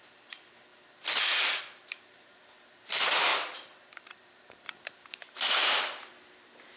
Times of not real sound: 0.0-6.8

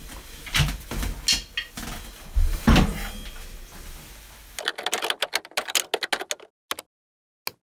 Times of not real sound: none

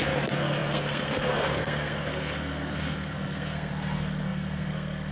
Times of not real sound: 0.0-5.1

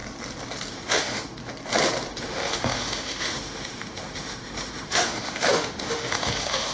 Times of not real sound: 0.7-1.4; 2.1-6.7

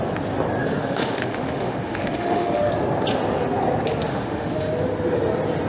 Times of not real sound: 0.6-2.7; 4.1-4.7

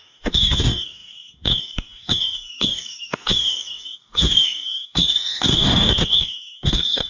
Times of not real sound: 0.0-7.1